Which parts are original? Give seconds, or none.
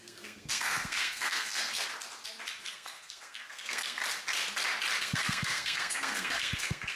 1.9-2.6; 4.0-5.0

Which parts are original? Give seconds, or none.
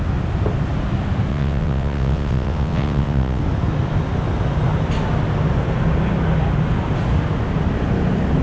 0.0-1.3; 3.4-8.4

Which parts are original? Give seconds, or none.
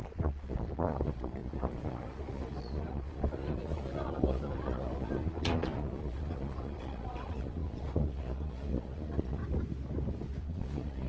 9.4-10.4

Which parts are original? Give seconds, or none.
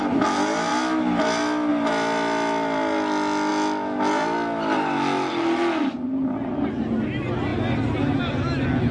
0.0-8.9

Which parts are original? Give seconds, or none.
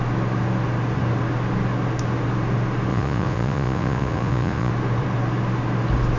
0.0-2.9; 4.7-6.2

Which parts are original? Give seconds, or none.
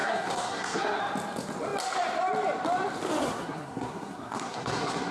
1.0-3.2